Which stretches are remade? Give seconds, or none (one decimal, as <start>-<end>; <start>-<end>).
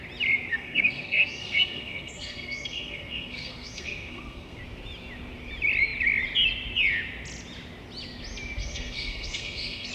0.5-4.6; 8.6-9.9